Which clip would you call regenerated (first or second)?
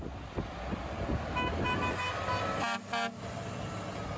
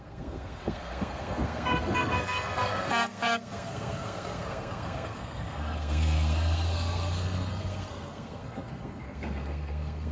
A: second